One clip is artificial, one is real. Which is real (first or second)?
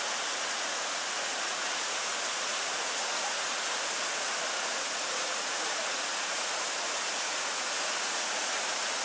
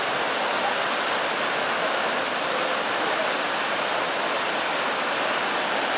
second